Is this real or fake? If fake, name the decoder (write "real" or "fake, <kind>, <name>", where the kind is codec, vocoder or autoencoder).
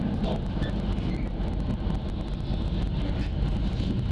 real